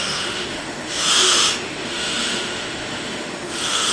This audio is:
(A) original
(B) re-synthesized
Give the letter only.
B